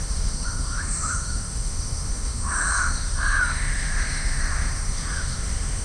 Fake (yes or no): yes